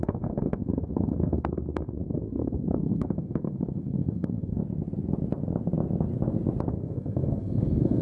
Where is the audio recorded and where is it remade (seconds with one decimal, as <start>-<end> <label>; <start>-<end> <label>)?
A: 0.0-4.6 remade; 4.6-6.7 recorded; 6.7-8.0 remade